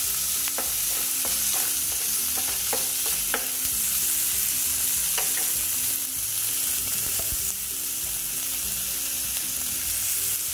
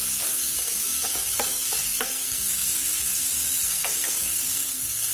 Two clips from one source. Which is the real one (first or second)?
first